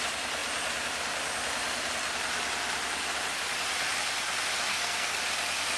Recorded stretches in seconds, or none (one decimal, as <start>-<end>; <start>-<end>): 0.0-4.7; 5.2-5.8